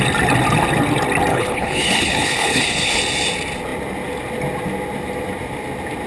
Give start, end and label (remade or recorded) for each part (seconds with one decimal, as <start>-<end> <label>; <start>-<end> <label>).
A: 0.0-1.3 recorded; 1.3-3.0 remade; 3.0-6.1 recorded